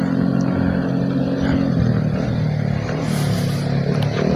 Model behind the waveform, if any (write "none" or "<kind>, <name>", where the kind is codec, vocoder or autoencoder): none